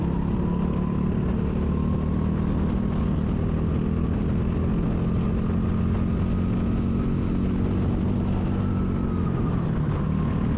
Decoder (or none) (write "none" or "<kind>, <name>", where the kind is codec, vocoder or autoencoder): none